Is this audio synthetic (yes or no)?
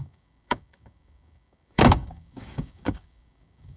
yes